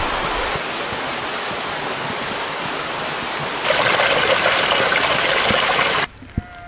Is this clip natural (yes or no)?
yes